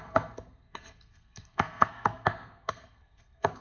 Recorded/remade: remade